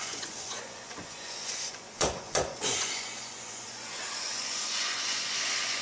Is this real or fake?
fake